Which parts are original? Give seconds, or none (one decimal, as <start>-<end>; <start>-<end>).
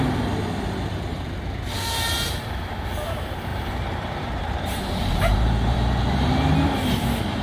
0.0-1.1; 2.3-3.5; 6.3-7.4